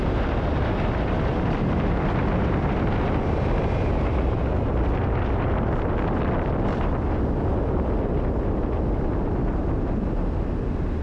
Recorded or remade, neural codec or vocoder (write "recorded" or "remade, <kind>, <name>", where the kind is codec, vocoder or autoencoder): recorded